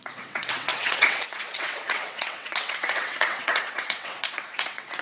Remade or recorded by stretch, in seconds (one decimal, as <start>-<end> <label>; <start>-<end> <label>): 0.0-5.0 remade